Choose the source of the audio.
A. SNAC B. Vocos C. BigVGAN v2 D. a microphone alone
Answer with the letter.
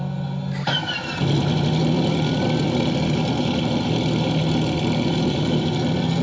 D